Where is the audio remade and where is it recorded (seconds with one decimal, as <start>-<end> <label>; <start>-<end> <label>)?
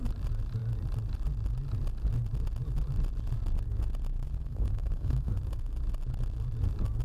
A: 0.0-4.4 recorded; 4.4-5.3 remade; 5.3-7.0 recorded